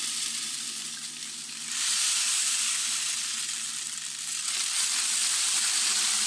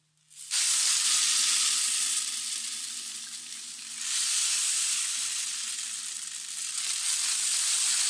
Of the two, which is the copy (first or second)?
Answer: first